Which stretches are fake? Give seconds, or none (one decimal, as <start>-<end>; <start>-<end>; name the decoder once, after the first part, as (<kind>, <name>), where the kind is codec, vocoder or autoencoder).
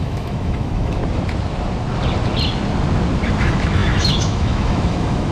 0.0-1.0 (autoencoder, DAC-VAE); 3.4-5.3